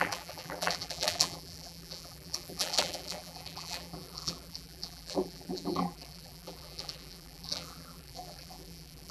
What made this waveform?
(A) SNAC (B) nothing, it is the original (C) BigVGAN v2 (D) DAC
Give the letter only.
C